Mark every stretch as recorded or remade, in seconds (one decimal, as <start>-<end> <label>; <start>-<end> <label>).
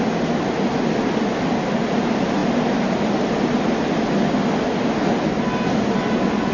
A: 0.0-6.5 recorded